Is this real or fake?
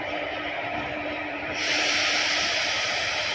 fake